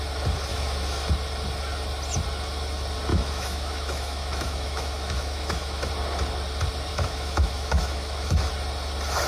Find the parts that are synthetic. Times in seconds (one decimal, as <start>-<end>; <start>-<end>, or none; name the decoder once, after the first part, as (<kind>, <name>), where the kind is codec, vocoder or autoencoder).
0.5-1.1 (autoencoder, DAC-VAE); 3.1-5.9; 6.9-8.4